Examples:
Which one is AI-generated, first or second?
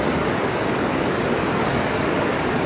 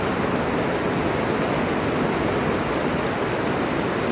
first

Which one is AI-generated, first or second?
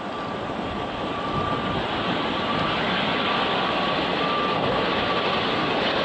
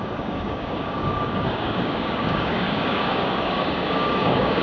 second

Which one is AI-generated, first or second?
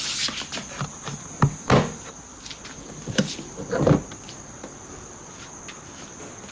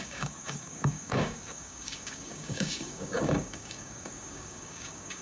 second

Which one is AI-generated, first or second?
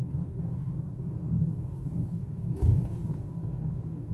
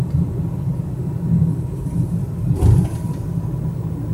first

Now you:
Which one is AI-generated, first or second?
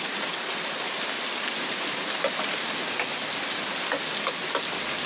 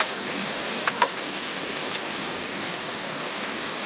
second